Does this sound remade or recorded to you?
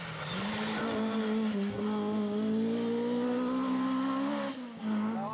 recorded